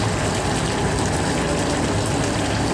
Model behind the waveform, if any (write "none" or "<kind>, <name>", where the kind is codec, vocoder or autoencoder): none